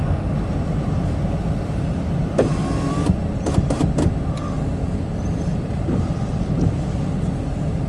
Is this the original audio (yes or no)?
yes